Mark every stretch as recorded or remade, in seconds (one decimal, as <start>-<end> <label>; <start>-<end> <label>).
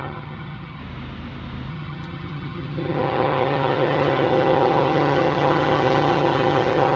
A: 0.0-0.8 remade; 0.8-1.7 recorded; 1.7-7.0 remade